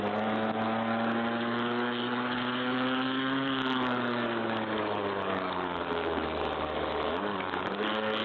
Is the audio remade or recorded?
remade